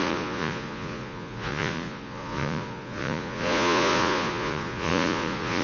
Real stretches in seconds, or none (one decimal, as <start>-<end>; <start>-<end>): none